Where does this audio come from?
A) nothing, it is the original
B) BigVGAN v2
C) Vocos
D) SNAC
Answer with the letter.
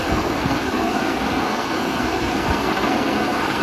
D